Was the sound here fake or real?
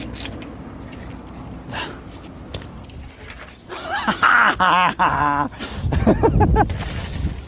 real